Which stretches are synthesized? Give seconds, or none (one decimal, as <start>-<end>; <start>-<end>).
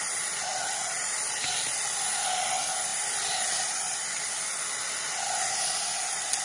none